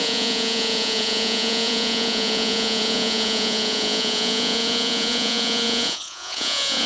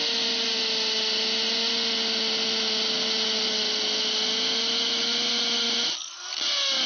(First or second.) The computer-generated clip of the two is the first